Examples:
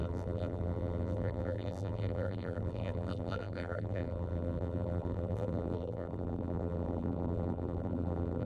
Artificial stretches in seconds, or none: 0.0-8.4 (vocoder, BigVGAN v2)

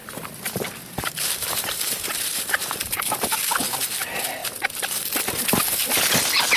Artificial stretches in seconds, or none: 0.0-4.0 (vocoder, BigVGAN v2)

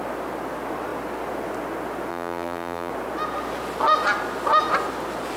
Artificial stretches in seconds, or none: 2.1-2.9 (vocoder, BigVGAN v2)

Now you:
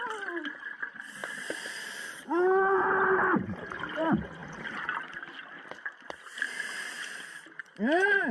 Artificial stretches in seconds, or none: none

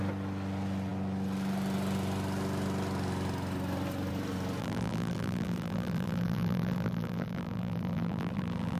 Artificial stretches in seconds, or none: 4.6-8.8 (vocoder, BigVGAN v2)

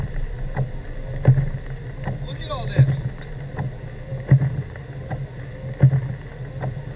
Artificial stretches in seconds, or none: 4.1-4.7 (vocoder, BigVGAN v2)